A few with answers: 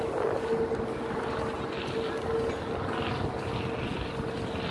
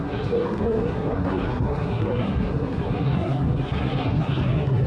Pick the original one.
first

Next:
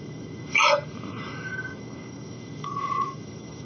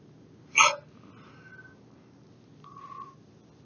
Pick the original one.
second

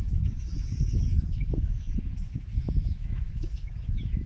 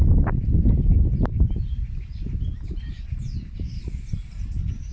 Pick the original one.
second